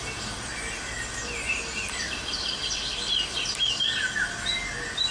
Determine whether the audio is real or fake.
real